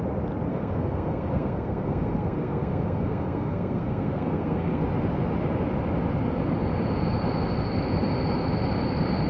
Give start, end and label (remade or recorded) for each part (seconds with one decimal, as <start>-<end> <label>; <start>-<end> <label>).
0.0-0.5 recorded; 0.5-4.8 remade; 4.8-9.3 recorded